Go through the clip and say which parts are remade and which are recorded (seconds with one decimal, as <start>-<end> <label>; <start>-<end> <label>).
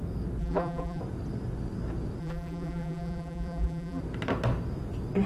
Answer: 0.0-0.4 recorded; 0.4-1.0 remade; 1.0-2.2 recorded; 2.2-4.0 remade; 4.0-5.3 recorded